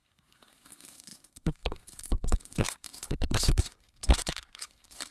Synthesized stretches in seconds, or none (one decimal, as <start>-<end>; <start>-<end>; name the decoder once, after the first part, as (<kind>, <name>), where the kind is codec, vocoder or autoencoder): 0.0-5.1 (codec, SNAC)